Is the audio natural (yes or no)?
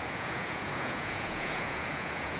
no